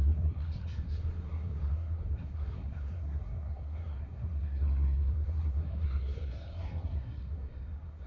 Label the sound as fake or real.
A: fake